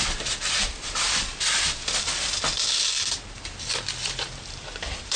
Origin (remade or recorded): remade